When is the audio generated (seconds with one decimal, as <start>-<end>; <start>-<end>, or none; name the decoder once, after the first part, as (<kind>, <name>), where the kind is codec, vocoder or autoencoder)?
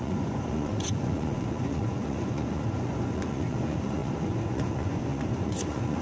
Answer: 0.0-6.0 (vocoder, Vocos)